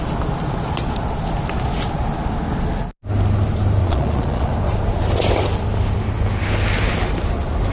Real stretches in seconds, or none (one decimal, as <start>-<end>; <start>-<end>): 0.0-3.8; 4.5-7.7